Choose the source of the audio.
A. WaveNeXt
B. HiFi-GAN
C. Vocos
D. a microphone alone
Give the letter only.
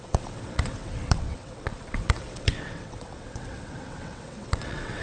A